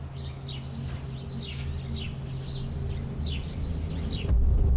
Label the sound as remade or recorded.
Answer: recorded